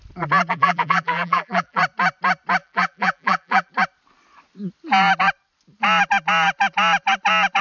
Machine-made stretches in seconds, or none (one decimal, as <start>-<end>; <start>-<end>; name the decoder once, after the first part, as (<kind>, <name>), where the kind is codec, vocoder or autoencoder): 0.5-1.8 (vocoder, BigVGAN v2); 2.6-3.7